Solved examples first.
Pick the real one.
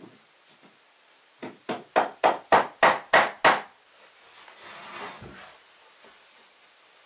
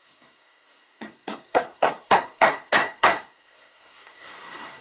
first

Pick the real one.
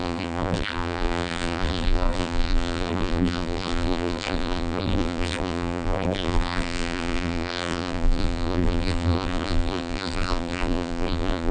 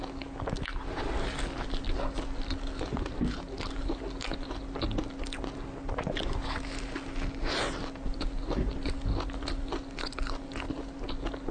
second